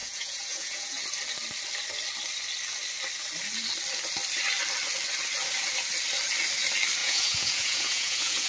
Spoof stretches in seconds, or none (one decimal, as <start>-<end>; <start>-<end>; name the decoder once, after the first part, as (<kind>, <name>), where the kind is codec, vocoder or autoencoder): 0.0-1.0 (vocoder, Vocos); 7.0-8.5